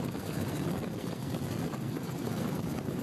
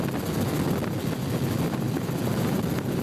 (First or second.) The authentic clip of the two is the second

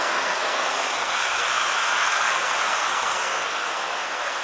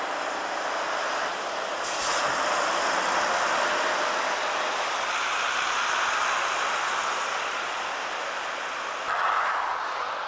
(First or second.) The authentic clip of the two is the second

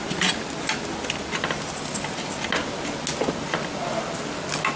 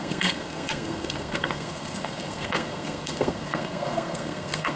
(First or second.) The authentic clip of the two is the first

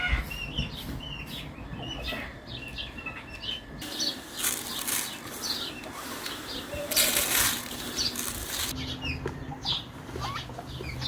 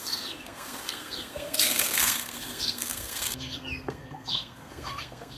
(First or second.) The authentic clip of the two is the first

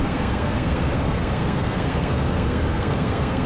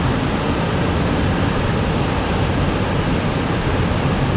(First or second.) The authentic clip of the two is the second